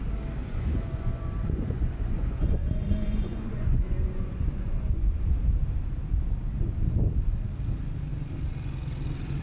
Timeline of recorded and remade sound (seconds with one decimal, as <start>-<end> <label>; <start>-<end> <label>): 0.0-0.4 recorded; 0.4-5.2 remade; 5.2-9.4 recorded